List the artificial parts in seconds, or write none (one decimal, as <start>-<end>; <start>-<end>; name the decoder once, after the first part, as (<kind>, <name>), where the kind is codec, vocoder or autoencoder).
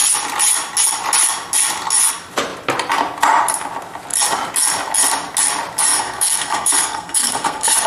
5.9-7.9 (codec, SNAC)